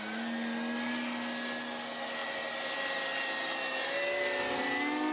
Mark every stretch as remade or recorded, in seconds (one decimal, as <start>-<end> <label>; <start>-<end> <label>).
0.0-5.1 recorded